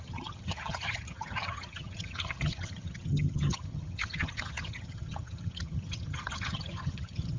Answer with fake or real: fake